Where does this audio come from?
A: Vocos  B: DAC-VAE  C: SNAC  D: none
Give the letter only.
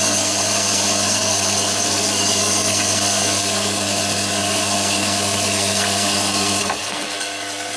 C